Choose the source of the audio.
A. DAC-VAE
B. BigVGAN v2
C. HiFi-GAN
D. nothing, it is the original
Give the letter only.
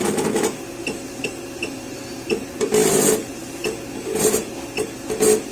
D